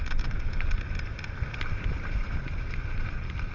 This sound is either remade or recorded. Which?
recorded